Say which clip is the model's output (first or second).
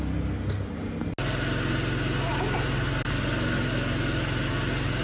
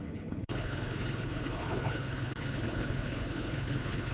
second